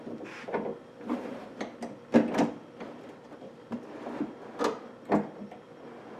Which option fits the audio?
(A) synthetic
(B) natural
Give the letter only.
B